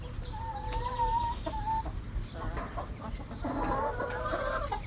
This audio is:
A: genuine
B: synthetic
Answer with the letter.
A